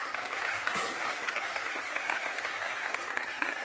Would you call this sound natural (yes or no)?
no